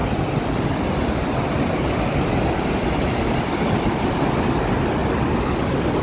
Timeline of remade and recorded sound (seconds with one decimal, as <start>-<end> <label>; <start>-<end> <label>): 0.0-6.0 recorded